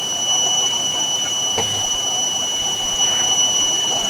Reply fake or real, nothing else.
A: fake